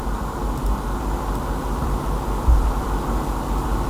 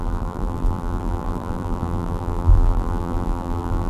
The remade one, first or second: second